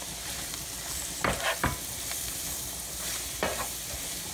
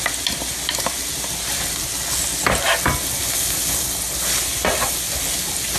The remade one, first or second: first